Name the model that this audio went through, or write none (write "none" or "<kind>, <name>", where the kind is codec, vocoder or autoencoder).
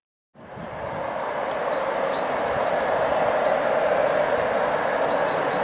none